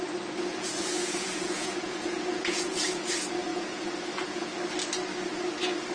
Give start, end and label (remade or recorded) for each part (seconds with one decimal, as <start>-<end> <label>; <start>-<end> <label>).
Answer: 0.0-0.5 recorded; 0.5-3.1 remade; 3.1-3.5 recorded; 3.5-4.4 remade; 4.4-5.9 recorded